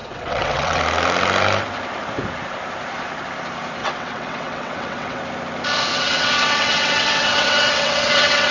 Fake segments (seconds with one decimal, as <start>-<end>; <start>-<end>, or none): 0.0-0.8; 3.8-5.2; 5.9-8.5